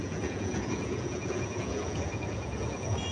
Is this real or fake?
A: fake